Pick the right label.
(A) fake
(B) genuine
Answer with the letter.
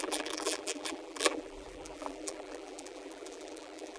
A